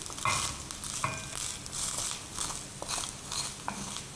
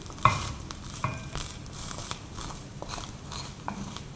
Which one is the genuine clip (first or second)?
first